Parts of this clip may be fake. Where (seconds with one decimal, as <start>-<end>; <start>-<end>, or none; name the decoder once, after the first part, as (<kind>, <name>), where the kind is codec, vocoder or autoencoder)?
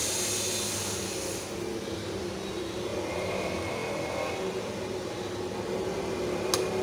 none